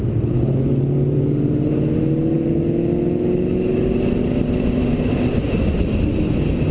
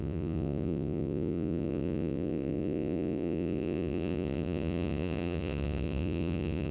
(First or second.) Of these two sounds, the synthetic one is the second